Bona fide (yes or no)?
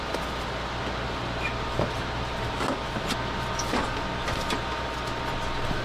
yes